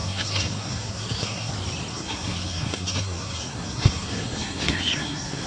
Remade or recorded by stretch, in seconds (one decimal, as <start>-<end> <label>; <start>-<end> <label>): 0.0-1.5 remade; 1.5-1.9 recorded; 1.9-5.5 remade

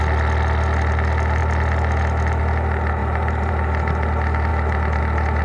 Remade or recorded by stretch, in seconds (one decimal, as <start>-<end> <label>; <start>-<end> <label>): 0.0-3.0 recorded; 3.0-3.5 remade; 3.5-5.4 recorded

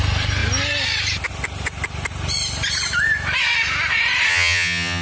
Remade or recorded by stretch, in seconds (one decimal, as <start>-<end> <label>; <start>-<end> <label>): 0.0-4.3 recorded; 4.3-5.0 remade

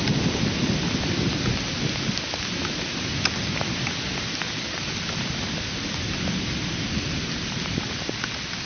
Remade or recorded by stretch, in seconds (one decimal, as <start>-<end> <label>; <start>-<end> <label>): 0.0-8.7 recorded

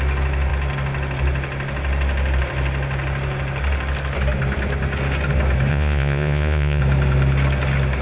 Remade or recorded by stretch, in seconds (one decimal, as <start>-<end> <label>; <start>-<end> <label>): 0.0-5.7 recorded; 5.7-6.8 remade; 6.8-8.0 recorded

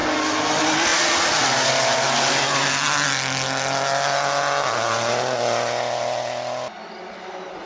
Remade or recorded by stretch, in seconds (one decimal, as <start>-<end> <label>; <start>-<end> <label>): 0.0-7.7 recorded

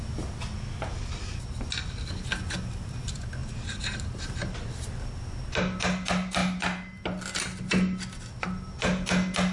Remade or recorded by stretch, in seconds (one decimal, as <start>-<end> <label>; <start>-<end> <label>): 0.0-3.4 recorded; 3.4-4.7 remade; 4.7-6.4 recorded; 6.4-6.9 remade; 6.9-9.5 recorded

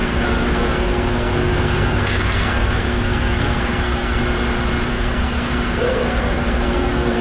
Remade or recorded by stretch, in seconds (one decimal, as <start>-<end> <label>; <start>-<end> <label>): 0.0-4.2 remade; 4.2-4.9 recorded; 4.9-7.2 remade